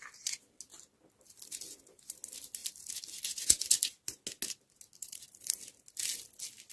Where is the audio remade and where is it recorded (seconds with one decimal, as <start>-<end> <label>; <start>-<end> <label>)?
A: 0.0-5.0 recorded; 5.0-5.6 remade; 5.6-6.7 recorded